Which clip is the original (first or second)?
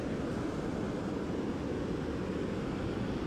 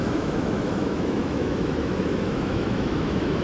first